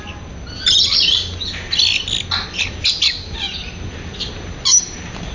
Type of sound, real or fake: real